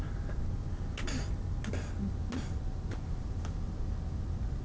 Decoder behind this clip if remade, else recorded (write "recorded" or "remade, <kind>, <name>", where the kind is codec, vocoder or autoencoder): recorded